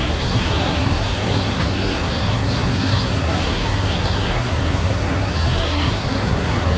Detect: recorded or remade remade